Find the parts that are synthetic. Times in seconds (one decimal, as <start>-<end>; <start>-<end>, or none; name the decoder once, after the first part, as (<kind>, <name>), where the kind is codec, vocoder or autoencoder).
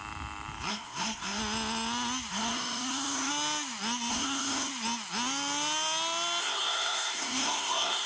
0.7-1.4 (codec, SNAC); 2.3-3.3; 4.1-4.7; 6.4-8.1